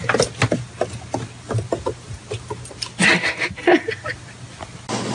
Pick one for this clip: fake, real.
real